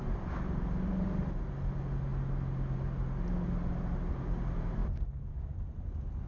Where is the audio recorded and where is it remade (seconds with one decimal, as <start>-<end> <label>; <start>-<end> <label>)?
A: 0.0-1.2 remade; 1.2-6.3 recorded